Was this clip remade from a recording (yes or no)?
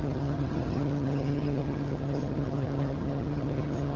yes